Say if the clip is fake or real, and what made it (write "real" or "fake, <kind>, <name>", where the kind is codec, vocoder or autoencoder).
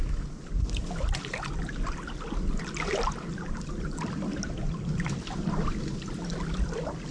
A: real